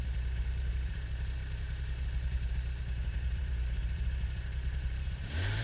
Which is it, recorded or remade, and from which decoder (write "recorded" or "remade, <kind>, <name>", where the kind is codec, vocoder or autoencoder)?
remade, vocoder, BigVGAN v2